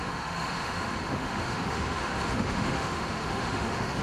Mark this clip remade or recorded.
remade